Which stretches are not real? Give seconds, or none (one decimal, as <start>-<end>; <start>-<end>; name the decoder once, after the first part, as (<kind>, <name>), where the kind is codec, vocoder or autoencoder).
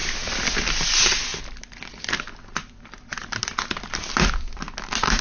none